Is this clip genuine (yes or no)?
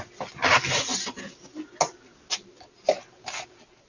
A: yes